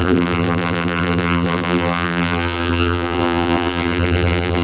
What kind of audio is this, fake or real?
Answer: fake